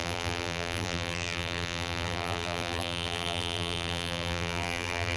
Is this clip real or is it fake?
fake